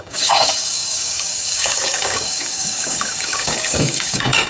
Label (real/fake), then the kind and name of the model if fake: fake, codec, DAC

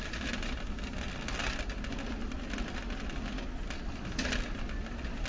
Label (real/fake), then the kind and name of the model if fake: real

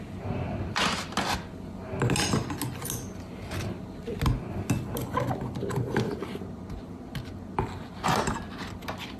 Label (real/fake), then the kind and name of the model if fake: real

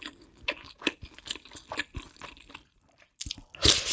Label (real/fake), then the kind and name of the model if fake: real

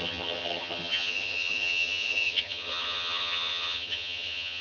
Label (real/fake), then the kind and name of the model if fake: fake, vocoder, HiFi-GAN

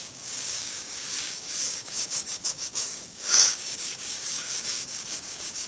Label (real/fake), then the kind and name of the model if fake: fake, codec, DAC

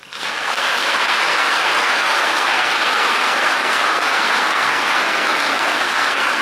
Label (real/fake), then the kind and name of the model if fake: fake, codec, SNAC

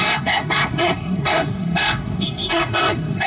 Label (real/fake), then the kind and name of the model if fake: fake, codec, SNAC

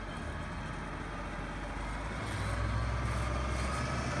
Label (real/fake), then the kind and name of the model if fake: real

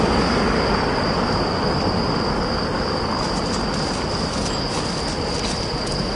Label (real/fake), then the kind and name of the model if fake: real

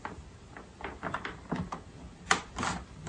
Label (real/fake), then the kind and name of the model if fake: real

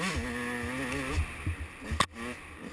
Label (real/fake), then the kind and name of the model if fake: real